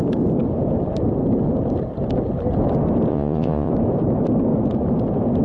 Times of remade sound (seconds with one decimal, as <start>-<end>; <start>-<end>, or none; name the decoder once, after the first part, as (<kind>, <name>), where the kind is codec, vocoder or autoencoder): 3.1-3.7 (vocoder, Vocos)